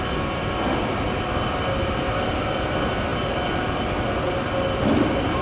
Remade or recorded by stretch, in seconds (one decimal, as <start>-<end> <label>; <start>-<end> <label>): 0.0-5.4 recorded